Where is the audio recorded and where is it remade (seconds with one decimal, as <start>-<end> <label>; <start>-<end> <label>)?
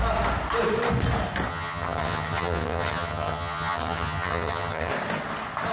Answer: 0.0-1.5 recorded; 1.5-4.9 remade; 4.9-5.7 recorded